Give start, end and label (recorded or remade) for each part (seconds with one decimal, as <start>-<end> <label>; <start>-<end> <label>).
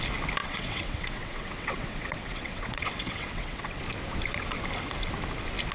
0.0-0.4 recorded; 0.4-3.8 remade; 3.8-5.7 recorded